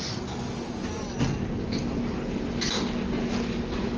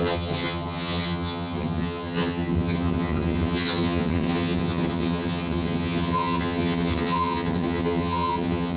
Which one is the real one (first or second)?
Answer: first